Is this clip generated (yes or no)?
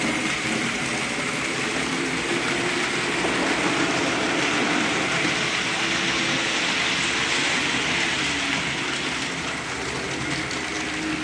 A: no